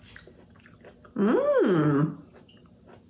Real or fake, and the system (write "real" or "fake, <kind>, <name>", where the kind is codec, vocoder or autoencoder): real